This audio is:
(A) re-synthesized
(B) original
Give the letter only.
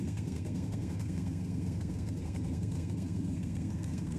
A